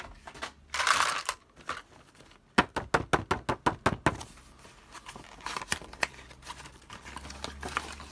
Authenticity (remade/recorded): recorded